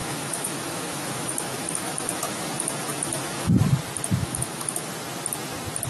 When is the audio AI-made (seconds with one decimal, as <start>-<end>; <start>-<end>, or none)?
0.0-3.5; 4.2-4.9